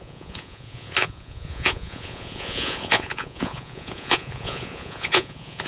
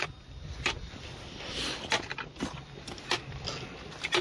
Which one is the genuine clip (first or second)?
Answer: second